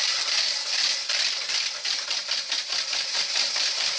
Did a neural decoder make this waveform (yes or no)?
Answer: no